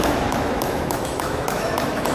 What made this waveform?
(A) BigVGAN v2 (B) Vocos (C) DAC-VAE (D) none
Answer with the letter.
C